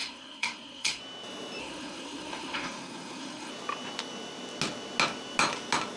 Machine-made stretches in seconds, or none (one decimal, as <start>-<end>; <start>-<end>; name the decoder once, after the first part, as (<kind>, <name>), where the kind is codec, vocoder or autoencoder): 0.0-1.0 (codec, SNAC); 1.6-3.5